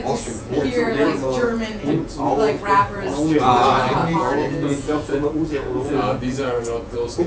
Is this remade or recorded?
remade